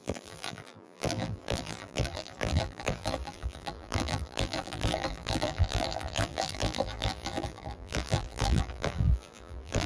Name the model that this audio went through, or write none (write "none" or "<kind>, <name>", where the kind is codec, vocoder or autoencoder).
vocoder, BigVGAN v2